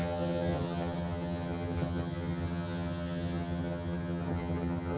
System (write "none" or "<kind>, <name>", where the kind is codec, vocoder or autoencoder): vocoder, HiFi-GAN